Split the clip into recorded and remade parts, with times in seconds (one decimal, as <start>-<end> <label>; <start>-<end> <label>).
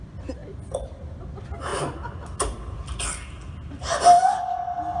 0.0-5.0 recorded